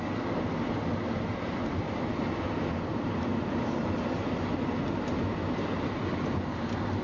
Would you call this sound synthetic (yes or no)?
no